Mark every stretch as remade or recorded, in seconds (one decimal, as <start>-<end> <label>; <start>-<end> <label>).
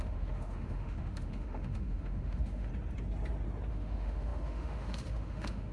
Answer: 0.0-2.7 remade; 2.7-3.7 recorded; 3.7-5.7 remade